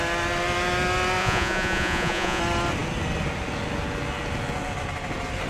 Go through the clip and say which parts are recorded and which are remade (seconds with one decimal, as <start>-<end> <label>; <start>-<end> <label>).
0.0-1.2 recorded; 1.2-2.4 remade; 2.4-5.5 recorded